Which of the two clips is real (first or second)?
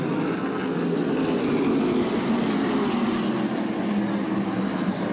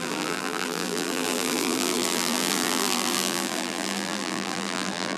first